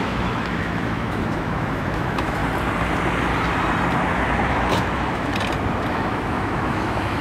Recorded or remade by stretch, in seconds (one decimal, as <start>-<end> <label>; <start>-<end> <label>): 0.0-2.4 remade; 2.4-4.5 recorded; 4.5-5.3 remade; 5.3-5.9 recorded; 5.9-7.2 remade